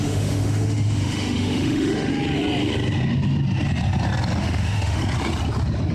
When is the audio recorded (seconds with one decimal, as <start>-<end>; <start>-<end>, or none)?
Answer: 2.1-4.4; 5.0-5.9